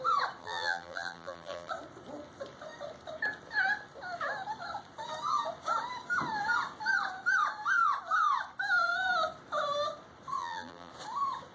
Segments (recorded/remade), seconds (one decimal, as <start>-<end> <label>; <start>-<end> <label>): 0.0-0.4 recorded; 0.4-1.7 remade; 1.7-10.4 recorded; 10.4-10.9 remade; 10.9-11.5 recorded